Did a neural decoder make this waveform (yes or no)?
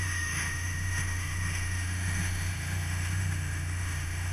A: yes